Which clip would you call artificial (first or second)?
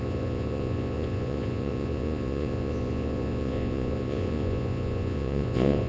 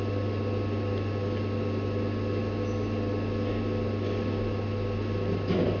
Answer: first